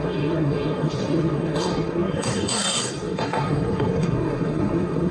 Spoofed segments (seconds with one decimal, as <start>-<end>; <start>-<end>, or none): 0.0-5.1